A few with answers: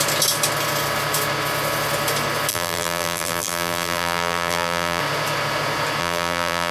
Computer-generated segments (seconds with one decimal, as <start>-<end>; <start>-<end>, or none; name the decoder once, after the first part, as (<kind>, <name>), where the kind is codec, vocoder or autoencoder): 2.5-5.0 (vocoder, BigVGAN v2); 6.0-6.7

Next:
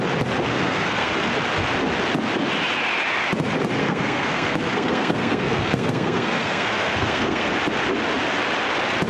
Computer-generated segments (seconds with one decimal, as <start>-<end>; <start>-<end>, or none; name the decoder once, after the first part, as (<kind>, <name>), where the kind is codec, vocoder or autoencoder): 0.5-1.1 (codec, SNAC); 3.8-7.5

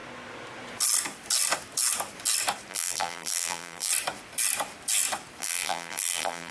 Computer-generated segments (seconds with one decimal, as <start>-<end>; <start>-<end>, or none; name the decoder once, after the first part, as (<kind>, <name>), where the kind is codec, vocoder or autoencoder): 2.7-3.9 (vocoder, BigVGAN v2); 5.4-6.5

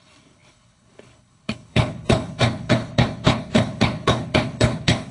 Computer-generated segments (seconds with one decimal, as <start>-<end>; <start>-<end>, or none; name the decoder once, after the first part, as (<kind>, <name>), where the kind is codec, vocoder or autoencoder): 0.0-5.1 (codec, HILCodec)